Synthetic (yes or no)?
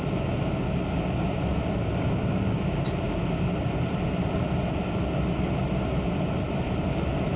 no